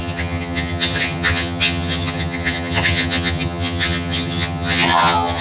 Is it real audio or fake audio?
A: fake